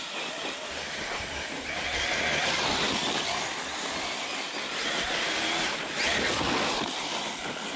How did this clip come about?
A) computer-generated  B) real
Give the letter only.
B